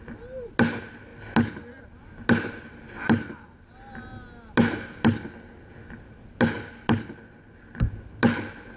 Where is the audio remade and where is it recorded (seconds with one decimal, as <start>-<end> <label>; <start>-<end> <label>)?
0.0-8.8 recorded